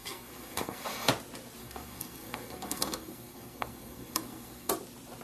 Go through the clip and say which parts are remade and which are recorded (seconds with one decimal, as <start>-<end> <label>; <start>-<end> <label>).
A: 0.0-1.1 remade; 1.1-1.6 recorded; 1.6-4.7 remade; 4.7-5.2 recorded